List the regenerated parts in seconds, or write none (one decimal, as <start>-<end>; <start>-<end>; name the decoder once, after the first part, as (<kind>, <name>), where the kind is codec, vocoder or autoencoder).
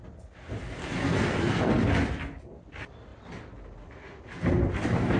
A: 0.8-1.7 (codec, SNAC)